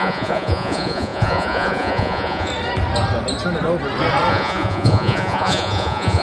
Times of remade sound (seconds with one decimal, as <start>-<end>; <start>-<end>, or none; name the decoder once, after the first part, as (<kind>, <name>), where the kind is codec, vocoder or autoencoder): 0.0-2.5 (vocoder, Vocos); 4.3-6.2